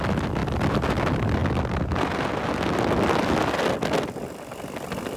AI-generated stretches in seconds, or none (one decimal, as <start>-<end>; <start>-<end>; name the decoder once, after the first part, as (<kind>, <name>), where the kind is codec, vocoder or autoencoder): none